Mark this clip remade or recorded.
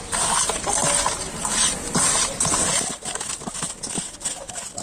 recorded